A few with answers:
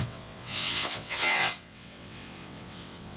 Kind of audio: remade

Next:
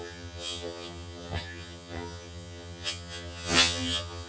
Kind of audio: remade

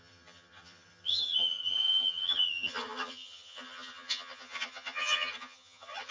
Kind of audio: remade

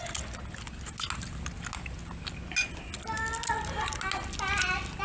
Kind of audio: recorded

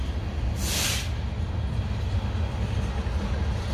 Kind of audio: recorded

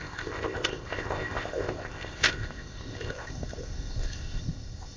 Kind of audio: remade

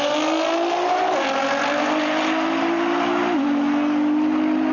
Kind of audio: recorded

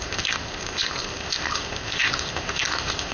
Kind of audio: remade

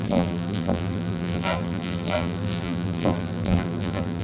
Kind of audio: remade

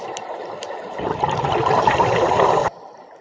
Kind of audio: remade